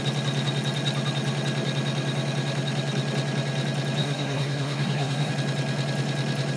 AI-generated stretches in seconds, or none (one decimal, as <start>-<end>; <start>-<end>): 4.0-5.3